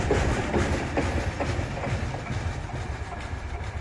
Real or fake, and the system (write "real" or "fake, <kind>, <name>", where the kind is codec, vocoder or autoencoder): real